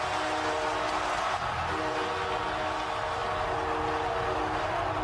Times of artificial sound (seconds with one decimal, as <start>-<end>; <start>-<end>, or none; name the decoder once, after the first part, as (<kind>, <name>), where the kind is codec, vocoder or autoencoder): none